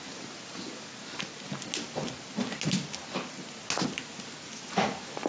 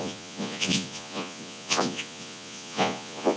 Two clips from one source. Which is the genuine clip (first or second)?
first